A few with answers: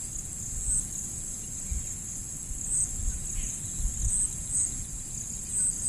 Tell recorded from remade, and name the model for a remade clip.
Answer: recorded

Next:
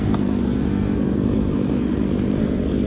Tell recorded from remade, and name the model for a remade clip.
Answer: remade, codec, SNAC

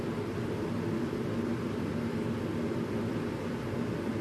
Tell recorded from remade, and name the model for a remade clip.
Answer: remade, vocoder, BigVGAN v2